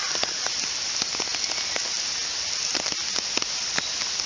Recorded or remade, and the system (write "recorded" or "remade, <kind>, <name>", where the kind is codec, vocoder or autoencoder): recorded